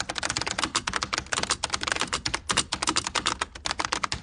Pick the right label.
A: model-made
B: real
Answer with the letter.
B